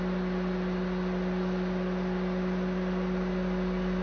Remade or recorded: recorded